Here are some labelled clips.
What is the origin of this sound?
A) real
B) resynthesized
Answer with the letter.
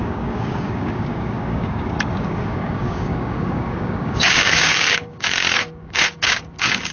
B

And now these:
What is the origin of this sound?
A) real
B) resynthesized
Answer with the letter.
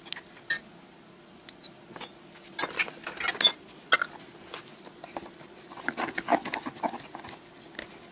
A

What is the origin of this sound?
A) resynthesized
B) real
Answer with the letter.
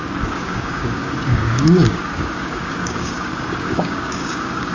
A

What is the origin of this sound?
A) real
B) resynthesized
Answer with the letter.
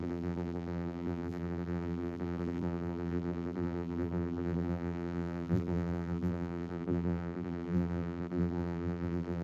B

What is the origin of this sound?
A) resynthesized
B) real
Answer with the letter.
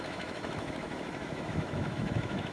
A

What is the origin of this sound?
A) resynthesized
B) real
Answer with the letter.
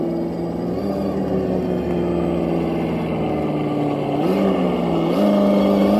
B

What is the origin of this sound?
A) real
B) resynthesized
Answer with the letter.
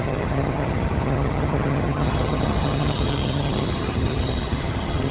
B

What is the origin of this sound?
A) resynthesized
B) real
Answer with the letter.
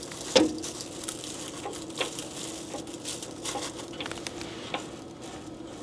B